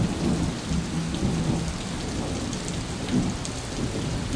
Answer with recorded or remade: recorded